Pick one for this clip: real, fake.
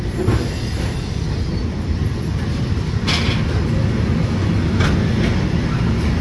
real